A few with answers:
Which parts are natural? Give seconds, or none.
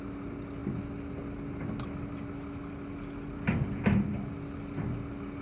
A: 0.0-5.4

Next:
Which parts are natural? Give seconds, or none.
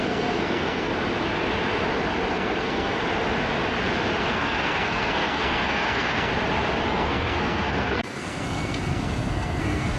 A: 0.9-2.3; 3.0-4.2; 6.3-6.9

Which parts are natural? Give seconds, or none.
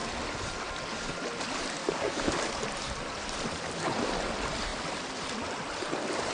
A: 0.0-1.8; 2.6-6.3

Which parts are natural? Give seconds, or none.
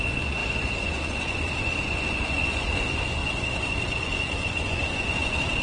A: none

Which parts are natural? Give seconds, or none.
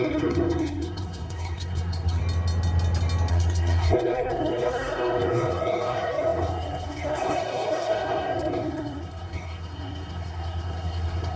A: 2.2-3.3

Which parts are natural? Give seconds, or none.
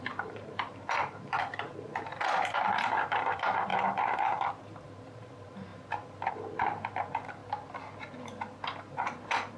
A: 7.4-8.4